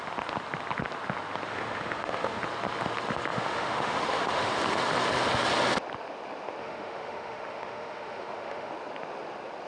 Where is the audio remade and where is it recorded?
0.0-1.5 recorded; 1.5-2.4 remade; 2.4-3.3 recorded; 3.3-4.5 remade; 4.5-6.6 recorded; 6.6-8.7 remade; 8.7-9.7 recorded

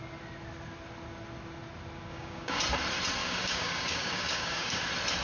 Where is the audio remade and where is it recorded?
0.0-2.1 recorded; 2.1-2.6 remade; 2.6-3.2 recorded; 3.2-4.8 remade; 4.8-5.2 recorded

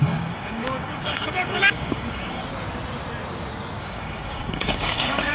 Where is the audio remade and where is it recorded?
0.0-2.4 remade; 2.4-3.8 recorded; 3.8-5.3 remade

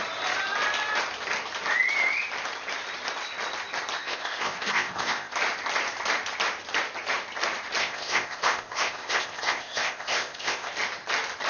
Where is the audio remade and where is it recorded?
0.0-4.0 recorded; 4.0-5.3 remade; 5.3-7.8 recorded; 7.8-10.7 remade; 10.7-11.5 recorded

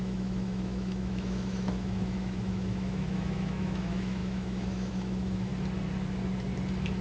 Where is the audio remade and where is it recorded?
0.0-5.5 remade; 5.5-7.0 recorded

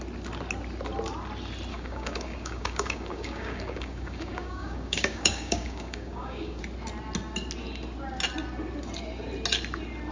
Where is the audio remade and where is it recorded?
0.0-1.7 recorded; 1.7-6.6 remade; 6.6-10.1 recorded

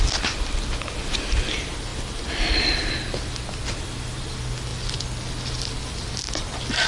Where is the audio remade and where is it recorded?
0.0-6.9 recorded

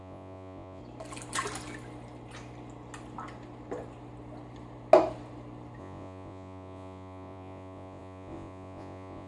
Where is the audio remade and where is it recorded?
0.0-0.8 remade; 0.8-5.8 recorded; 5.8-9.3 remade